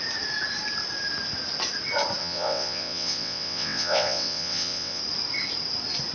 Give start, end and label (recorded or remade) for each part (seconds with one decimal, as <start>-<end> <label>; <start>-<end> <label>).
0.0-2.2 recorded; 2.2-5.0 remade; 5.0-6.1 recorded